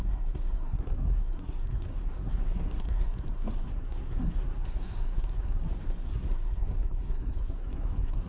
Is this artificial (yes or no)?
yes